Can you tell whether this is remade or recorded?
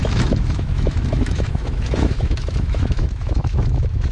remade